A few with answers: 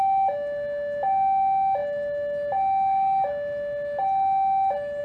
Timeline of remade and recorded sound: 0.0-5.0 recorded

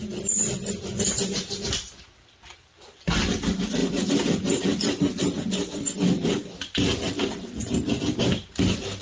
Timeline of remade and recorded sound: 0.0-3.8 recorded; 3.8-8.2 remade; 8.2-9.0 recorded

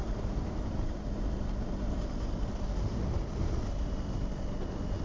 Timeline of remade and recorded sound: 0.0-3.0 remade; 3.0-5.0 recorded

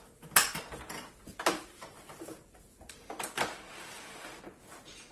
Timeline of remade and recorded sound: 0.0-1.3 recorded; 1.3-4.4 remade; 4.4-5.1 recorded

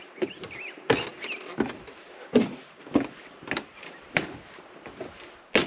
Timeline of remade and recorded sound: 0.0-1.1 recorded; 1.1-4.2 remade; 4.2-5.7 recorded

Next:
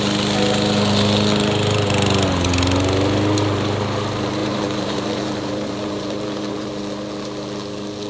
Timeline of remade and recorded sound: 0.0-4.4 recorded; 4.4-6.7 remade; 6.7-8.1 recorded

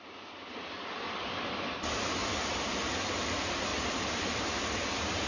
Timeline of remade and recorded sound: 0.0-2.2 remade; 2.2-2.7 recorded; 2.7-5.3 remade